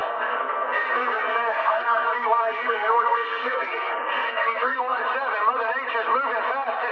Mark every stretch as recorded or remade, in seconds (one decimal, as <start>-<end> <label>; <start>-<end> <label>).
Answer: 0.0-5.0 remade; 5.0-6.9 recorded